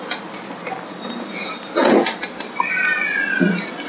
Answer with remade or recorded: recorded